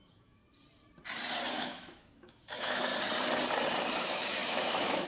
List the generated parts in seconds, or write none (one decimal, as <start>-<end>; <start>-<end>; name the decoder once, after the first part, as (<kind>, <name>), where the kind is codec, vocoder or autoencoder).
0.0-0.4 (autoencoder, DAC-VAE); 1.5-2.9; 4.0-5.1